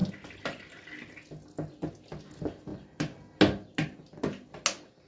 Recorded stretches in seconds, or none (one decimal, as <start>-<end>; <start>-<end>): 0.0-5.1